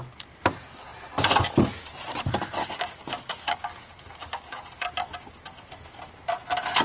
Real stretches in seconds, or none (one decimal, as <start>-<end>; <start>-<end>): 0.0-2.6; 4.9-6.8

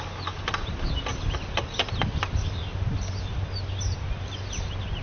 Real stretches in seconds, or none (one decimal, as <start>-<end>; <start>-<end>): 0.0-5.0

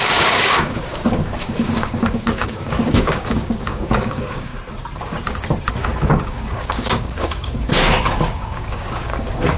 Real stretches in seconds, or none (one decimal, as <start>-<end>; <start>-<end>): 4.5-5.7

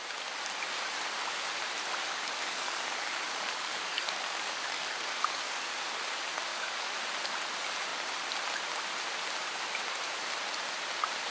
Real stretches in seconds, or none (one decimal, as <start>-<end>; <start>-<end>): 0.0-2.1; 5.7-6.5; 7.0-11.3

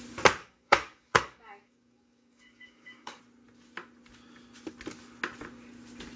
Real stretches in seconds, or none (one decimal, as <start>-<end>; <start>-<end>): 0.0-0.4; 3.2-6.2

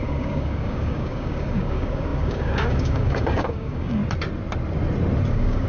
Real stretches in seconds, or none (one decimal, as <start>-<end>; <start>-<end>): 4.0-5.3

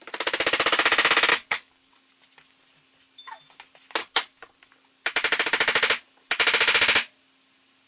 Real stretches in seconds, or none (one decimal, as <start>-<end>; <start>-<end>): 0.0-1.3; 1.9-4.0; 4.7-7.9

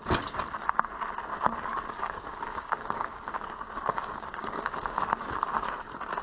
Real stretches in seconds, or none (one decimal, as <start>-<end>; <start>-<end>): 0.0-1.3; 5.0-6.2